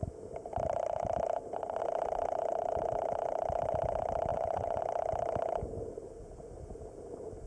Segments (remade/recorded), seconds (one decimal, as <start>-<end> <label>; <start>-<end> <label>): 0.0-4.3 recorded; 4.3-4.8 remade; 4.8-7.5 recorded